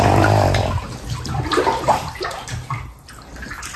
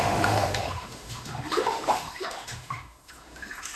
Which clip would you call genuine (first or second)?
first